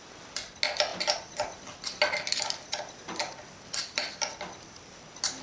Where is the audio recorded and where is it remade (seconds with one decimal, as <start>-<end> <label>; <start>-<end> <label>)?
0.0-5.4 recorded